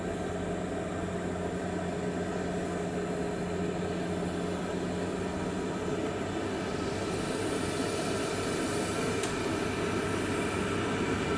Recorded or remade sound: recorded